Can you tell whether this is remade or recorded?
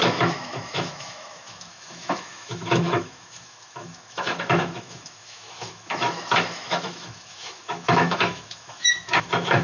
remade